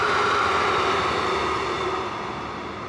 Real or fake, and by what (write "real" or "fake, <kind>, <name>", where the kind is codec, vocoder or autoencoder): real